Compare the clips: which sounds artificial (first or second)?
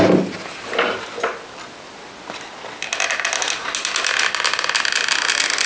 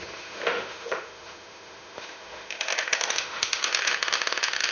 second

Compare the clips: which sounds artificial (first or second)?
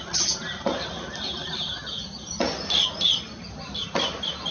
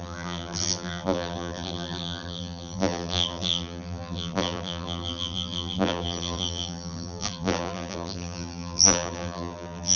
second